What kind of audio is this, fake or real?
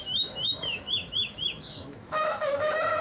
fake